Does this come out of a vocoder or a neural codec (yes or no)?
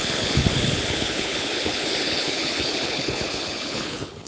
yes